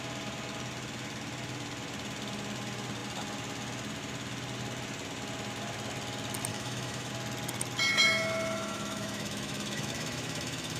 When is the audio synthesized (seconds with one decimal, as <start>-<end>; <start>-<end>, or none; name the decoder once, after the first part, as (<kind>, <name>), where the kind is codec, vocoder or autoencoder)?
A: 6.5-7.1 (autoencoder, DAC-VAE); 7.9-10.8